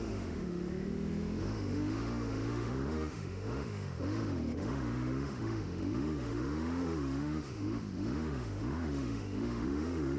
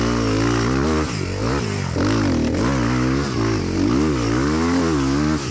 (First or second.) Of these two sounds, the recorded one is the second